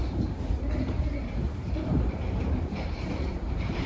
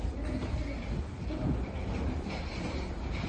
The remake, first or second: first